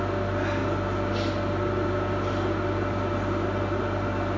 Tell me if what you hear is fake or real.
real